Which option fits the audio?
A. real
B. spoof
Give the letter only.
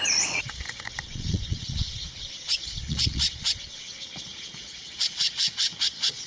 B